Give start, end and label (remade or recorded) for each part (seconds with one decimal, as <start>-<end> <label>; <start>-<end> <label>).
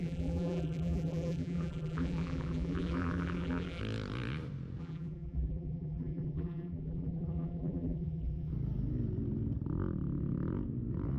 0.0-3.8 remade; 3.8-4.8 recorded; 4.8-8.5 remade; 8.5-11.2 recorded